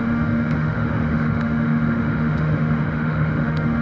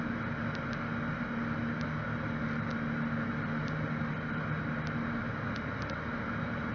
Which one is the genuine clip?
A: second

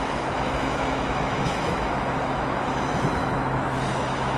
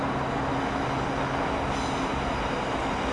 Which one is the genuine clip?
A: second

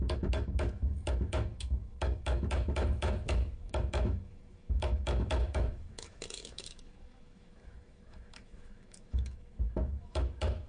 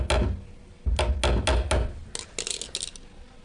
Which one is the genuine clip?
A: second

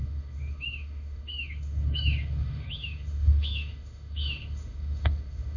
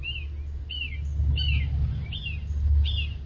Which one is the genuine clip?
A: second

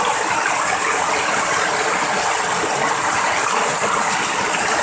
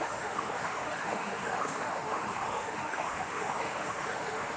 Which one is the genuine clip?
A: first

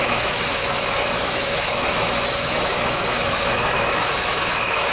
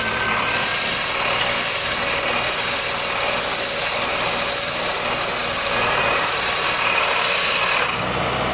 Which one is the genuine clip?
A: second